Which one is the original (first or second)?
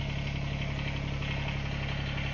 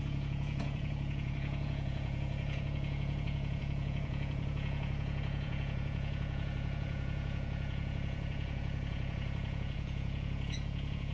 first